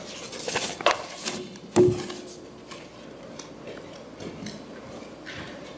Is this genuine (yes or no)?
yes